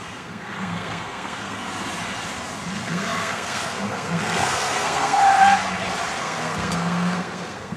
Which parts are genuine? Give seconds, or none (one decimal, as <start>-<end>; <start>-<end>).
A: 1.6-2.7; 5.2-6.2